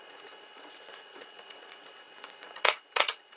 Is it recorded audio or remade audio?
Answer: remade